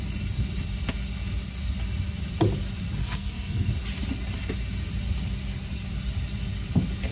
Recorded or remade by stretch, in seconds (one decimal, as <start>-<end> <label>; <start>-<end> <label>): 0.0-3.0 recorded; 3.0-3.7 remade; 3.7-7.1 recorded